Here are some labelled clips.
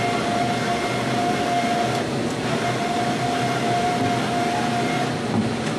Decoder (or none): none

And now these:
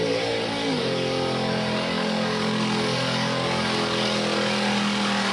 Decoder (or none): codec, DAC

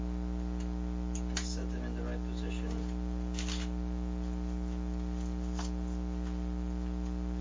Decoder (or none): none